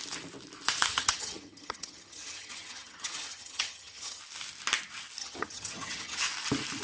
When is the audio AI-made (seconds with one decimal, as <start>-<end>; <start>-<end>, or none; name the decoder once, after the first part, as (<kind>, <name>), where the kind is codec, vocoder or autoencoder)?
0.9-4.2 (vocoder, HiFi-GAN); 5.2-6.2